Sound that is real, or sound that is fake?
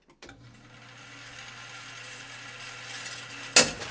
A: real